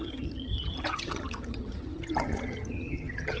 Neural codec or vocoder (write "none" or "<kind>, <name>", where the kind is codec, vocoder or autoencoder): vocoder, HiFi-GAN